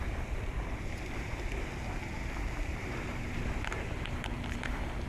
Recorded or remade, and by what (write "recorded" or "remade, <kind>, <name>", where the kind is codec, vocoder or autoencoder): remade, vocoder, BigVGAN v2